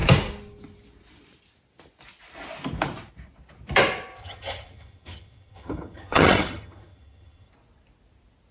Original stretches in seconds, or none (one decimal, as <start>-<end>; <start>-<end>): 0.0-4.2; 7.5-8.5